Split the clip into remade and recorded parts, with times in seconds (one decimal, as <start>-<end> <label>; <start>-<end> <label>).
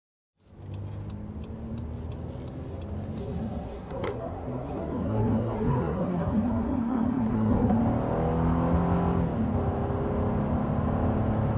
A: 0.0-3.2 recorded; 3.2-7.8 remade; 7.8-11.6 recorded